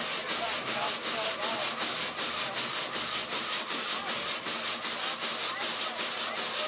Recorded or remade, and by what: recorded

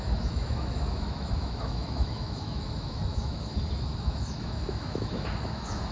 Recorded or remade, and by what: remade, autoencoder, DAC-VAE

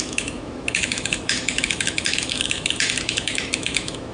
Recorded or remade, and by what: remade, autoencoder, DAC-VAE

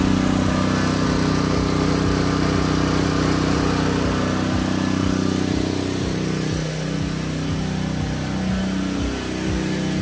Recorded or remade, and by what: recorded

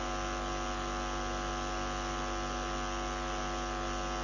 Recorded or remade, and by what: recorded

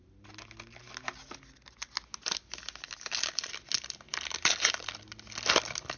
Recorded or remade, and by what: recorded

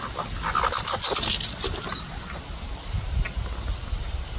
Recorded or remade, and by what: recorded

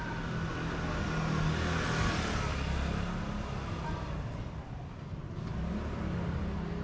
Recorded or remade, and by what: recorded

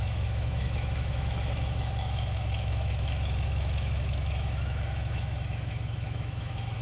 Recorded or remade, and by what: remade, autoencoder, DAC-VAE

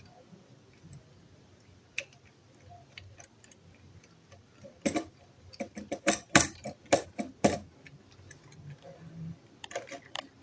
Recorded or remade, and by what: recorded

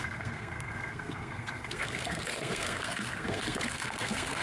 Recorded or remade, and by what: remade, codec, SNAC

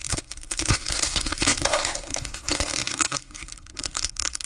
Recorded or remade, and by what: remade, codec, SNAC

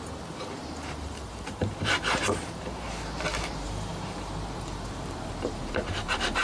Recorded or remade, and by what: remade, vocoder, BigVGAN v2